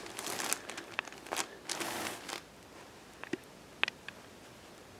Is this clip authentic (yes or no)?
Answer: yes